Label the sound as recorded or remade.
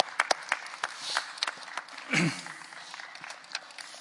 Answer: recorded